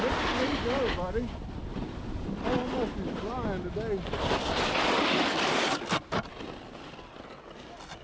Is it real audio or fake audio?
real